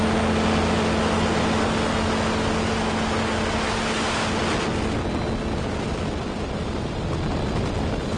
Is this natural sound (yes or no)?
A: yes